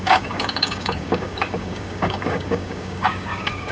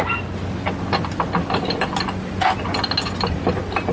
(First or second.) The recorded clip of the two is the second